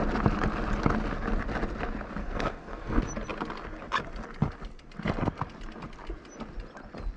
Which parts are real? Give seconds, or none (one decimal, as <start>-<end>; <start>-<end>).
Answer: 0.0-2.2; 3.0-7.2